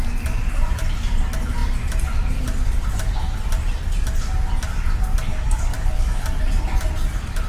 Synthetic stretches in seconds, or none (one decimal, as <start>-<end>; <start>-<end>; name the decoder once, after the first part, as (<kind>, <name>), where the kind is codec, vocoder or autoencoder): 5.3-6.2 (codec, DAC)